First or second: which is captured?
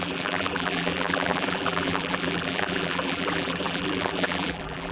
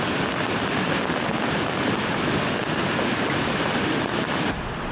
second